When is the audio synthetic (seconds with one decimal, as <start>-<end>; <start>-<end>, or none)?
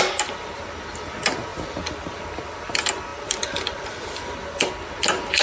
1.5-2.2; 3.1-4.7